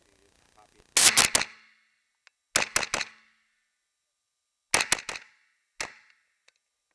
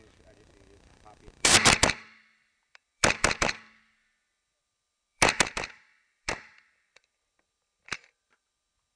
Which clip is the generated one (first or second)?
second